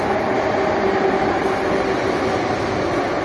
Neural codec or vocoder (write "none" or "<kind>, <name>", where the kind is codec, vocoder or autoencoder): none